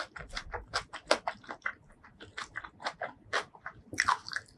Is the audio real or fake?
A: real